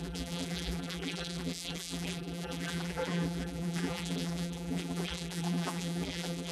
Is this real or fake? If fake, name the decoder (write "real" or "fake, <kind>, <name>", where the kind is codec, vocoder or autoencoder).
fake, vocoder, BigVGAN v2